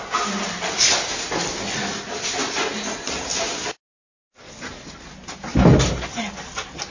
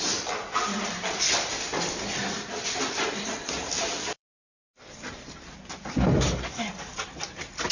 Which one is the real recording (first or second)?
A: first